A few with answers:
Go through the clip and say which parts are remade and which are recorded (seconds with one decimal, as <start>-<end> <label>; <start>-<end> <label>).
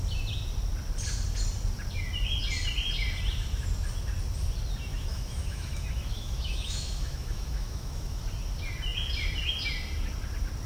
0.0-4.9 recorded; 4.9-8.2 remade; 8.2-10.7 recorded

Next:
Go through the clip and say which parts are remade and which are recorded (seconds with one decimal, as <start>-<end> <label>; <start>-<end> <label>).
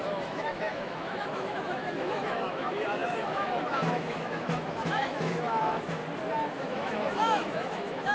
0.0-6.0 remade; 6.0-6.5 recorded; 6.5-8.1 remade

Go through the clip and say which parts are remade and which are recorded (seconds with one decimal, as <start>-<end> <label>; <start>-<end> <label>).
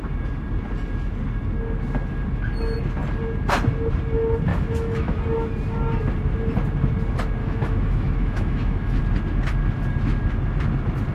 0.0-4.5 recorded; 4.5-5.2 remade; 5.2-7.4 recorded; 7.4-9.0 remade; 9.0-11.1 recorded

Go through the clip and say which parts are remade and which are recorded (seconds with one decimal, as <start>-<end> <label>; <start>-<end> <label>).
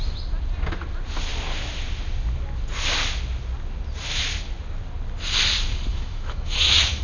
0.0-5.9 recorded; 5.9-7.0 remade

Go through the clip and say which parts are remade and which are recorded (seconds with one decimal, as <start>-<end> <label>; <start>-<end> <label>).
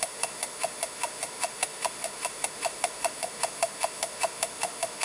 0.0-5.0 remade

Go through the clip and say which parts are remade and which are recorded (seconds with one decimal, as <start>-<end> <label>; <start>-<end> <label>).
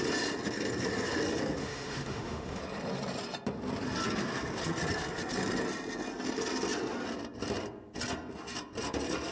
0.0-1.6 recorded; 1.6-2.6 remade; 2.6-9.3 recorded